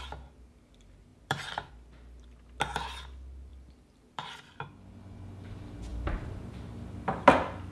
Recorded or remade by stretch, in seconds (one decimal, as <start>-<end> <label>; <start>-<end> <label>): 0.0-1.1 recorded; 1.1-1.7 remade; 1.7-3.5 recorded; 3.5-4.5 remade; 4.5-5.9 recorded; 5.9-7.7 remade